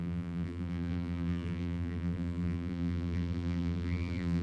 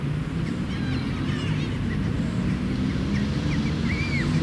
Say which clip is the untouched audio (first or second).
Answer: second